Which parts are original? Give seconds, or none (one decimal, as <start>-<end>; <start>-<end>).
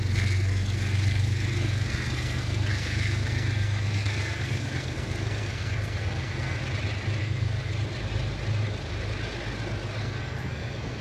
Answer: 6.6-7.2; 7.7-10.0